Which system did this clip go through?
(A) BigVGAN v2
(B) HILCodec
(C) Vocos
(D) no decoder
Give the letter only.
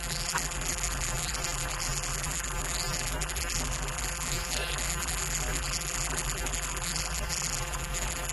A